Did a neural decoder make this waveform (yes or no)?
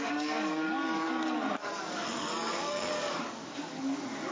yes